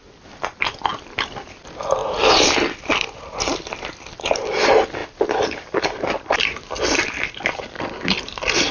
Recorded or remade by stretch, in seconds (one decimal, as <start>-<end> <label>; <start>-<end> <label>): 0.0-0.9 recorded; 0.9-1.6 remade; 1.6-2.0 recorded; 2.0-3.9 remade; 3.9-5.0 recorded; 5.0-7.2 remade; 7.2-8.7 recorded